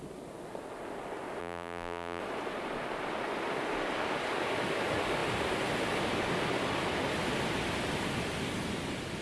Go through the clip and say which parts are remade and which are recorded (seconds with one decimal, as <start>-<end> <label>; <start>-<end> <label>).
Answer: 0.0-1.4 recorded; 1.4-2.2 remade; 2.2-9.2 recorded